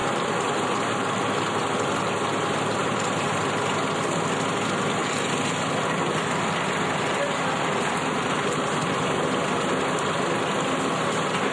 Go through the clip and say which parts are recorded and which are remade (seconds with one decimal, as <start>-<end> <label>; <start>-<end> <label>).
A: 0.0-0.6 remade; 0.6-2.8 recorded; 2.8-3.4 remade; 3.4-11.5 recorded